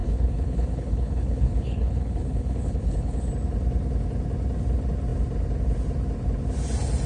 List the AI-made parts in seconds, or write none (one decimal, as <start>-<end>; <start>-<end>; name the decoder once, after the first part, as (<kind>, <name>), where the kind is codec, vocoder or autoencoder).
0.0-3.3 (codec, HILCodec)